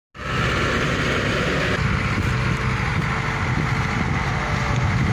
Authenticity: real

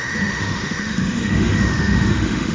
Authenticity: fake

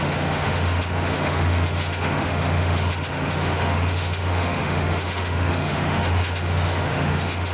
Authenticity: fake